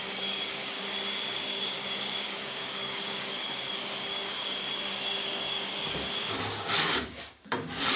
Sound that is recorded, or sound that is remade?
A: remade